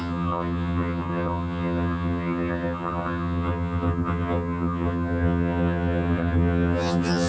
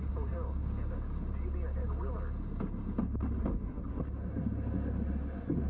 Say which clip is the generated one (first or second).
first